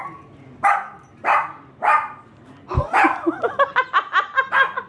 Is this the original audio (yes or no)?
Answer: yes